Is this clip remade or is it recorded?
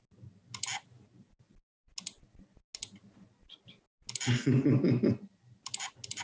recorded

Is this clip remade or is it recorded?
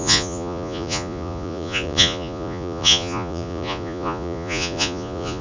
remade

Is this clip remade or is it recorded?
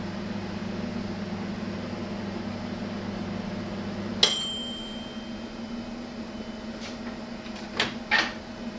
recorded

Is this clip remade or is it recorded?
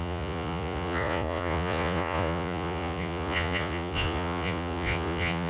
remade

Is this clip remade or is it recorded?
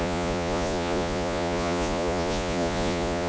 remade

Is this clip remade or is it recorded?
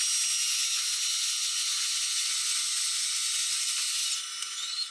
recorded